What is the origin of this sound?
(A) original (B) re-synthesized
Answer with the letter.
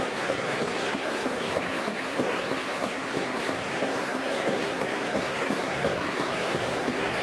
B